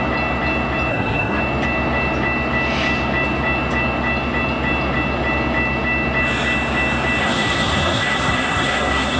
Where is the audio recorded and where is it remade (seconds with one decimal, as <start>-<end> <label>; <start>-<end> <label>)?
0.0-0.9 recorded; 0.9-1.4 remade; 1.4-7.2 recorded; 7.2-9.2 remade